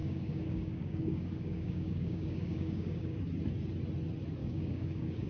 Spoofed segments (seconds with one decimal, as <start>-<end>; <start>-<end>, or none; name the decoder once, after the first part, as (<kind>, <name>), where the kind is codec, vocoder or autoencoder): 0.0-3.2 (codec, DAC); 4.4-5.3